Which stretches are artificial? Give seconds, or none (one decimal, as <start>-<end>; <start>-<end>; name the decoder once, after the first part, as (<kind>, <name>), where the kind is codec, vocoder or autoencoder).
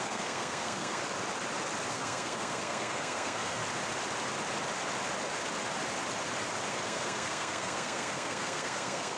0.0-1.0 (codec, SNAC); 1.9-3.6; 6.7-9.2